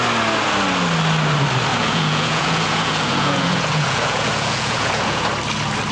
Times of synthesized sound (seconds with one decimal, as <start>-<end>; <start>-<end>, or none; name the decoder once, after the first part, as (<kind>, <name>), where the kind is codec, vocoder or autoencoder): 1.7-5.2 (vocoder, Vocos)